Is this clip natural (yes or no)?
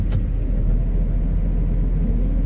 yes